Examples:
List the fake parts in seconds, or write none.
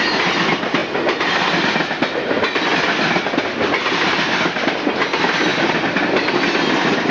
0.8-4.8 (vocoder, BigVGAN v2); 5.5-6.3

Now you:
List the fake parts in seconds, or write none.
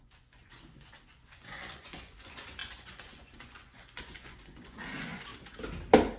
0.0-5.3 (vocoder, Vocos)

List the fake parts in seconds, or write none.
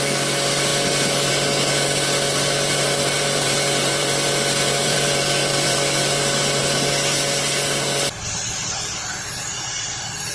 2.7-6.6 (vocoder, BigVGAN v2)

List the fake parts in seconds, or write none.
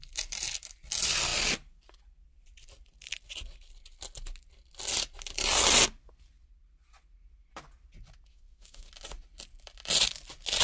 8.3-8.9 (autoencoder, DAC-VAE)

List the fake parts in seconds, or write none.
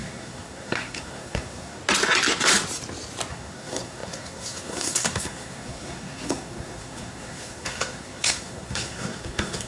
0.0-1.8 (codec, SNAC); 3.3-9.7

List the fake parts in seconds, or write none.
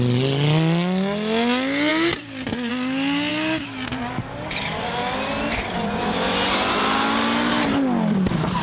none